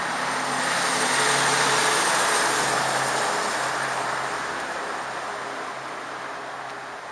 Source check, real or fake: real